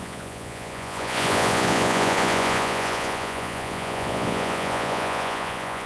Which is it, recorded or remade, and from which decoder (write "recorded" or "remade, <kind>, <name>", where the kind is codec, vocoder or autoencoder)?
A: remade, vocoder, Vocos